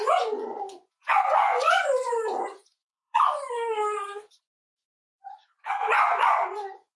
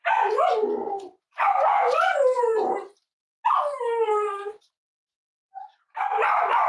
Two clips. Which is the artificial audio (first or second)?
first